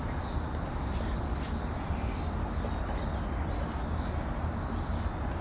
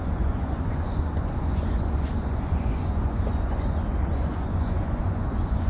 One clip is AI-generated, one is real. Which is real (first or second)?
first